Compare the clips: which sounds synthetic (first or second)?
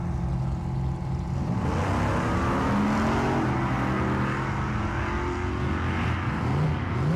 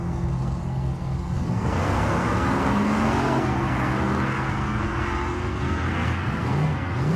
second